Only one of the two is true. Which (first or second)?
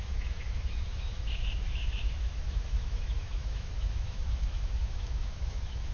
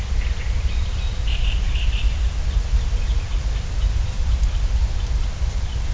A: second